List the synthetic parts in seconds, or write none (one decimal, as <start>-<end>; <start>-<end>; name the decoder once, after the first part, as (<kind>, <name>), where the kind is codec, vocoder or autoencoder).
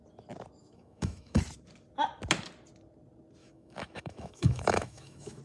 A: 0.6-1.4 (autoencoder, DAC-VAE); 3.4-5.4